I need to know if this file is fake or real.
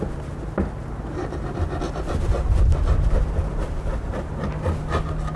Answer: real